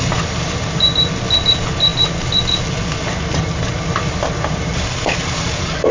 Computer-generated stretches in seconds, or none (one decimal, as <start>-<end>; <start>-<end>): none